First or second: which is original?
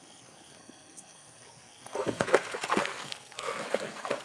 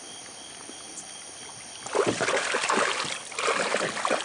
second